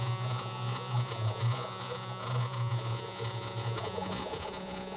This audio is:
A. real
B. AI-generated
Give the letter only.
B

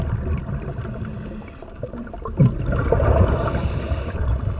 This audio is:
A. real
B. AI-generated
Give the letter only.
A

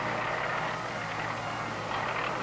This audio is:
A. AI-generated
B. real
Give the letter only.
B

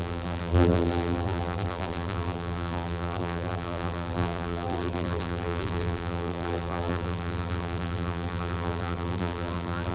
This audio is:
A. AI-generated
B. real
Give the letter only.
A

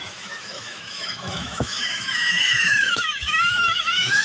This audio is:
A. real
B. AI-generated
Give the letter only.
B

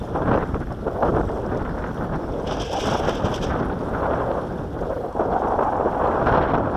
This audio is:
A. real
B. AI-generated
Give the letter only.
A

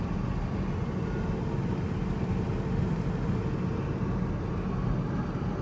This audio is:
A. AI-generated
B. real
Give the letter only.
B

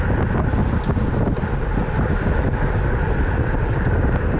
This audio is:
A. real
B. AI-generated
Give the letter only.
A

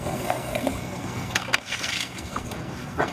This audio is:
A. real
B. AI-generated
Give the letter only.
B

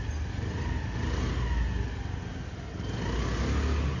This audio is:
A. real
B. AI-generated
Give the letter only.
A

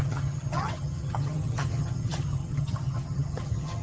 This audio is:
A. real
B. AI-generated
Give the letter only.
B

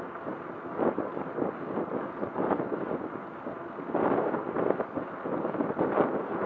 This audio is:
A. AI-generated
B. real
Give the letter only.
B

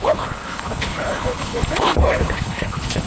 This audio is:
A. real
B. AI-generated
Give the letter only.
B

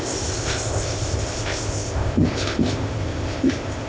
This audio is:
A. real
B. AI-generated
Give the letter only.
B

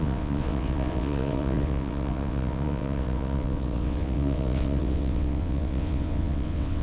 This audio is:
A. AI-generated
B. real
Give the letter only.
A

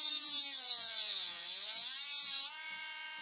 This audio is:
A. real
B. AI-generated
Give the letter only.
B